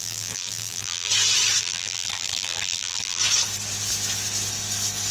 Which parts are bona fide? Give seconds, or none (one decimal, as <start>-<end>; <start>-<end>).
1.1-1.6; 3.2-5.1